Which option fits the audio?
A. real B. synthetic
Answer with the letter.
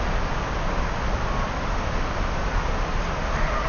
A